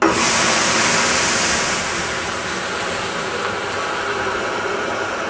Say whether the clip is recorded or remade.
recorded